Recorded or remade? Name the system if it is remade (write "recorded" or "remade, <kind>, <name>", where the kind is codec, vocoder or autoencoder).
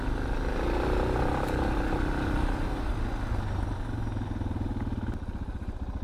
recorded